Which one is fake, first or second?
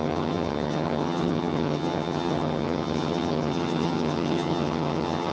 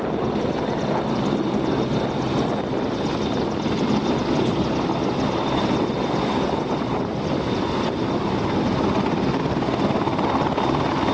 first